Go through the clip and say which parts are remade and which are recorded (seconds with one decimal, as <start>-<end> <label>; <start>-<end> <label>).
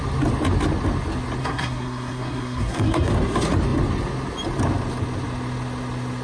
0.0-1.4 recorded; 1.4-3.1 remade; 3.1-6.2 recorded